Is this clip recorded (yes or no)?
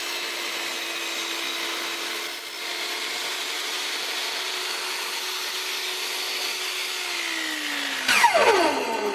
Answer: yes